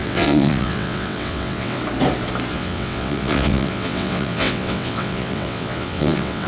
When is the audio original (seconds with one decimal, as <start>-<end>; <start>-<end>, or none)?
1.8-2.5